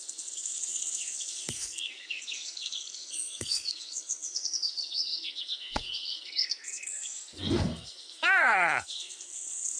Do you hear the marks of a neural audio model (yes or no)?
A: yes